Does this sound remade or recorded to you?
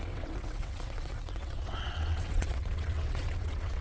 remade